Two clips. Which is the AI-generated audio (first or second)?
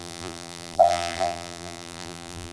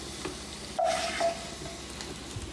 first